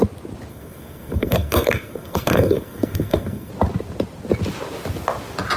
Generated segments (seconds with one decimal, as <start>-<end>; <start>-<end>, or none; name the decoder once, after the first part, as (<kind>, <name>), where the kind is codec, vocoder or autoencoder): 0.5-3.5 (codec, SNAC)